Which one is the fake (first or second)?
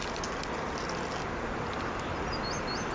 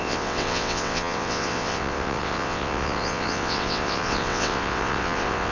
second